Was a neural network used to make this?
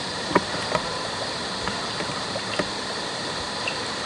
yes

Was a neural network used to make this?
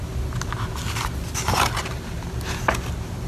no